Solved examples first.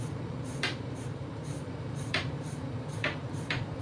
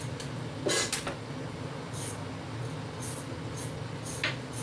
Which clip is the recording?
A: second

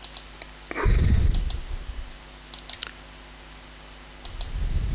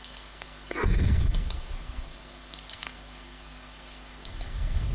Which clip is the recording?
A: first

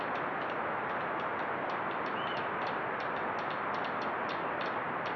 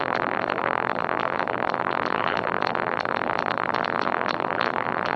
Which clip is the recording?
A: first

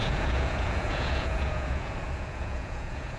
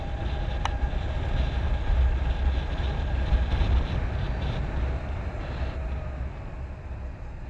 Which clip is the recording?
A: second